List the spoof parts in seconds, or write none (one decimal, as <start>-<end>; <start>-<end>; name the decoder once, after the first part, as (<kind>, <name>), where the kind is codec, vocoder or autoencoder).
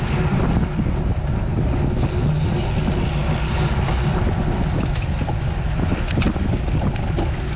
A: none